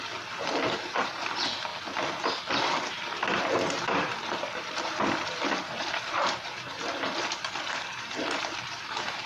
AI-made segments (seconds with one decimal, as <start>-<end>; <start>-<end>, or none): 0.0-1.7; 2.4-9.3